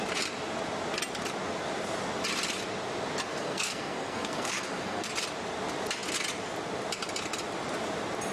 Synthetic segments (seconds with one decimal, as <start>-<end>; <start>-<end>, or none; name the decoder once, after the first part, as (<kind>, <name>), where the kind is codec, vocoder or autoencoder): 3.3-5.1 (codec, SNAC)